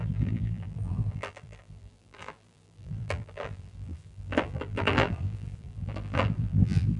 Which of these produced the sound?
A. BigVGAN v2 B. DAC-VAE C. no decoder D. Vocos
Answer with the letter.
A